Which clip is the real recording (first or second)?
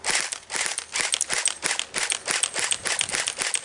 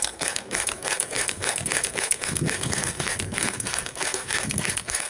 first